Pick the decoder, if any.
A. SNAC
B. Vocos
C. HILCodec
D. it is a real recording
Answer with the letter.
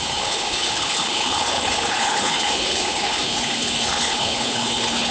C